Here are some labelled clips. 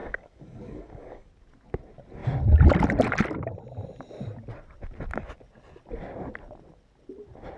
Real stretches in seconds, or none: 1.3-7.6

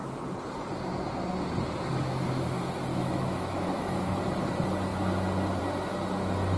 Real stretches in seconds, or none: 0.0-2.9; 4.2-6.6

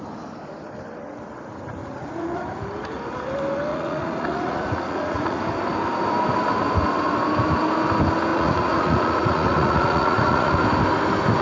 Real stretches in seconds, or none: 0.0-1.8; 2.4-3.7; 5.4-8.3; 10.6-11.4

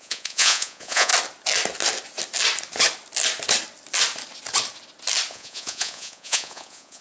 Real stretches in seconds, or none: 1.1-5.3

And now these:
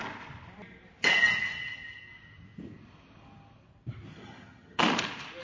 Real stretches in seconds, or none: 0.0-4.1; 4.8-5.4

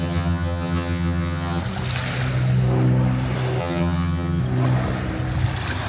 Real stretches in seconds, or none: 1.6-3.6; 4.4-5.9

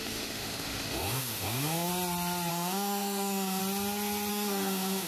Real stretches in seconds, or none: 1.9-2.5; 3.6-4.3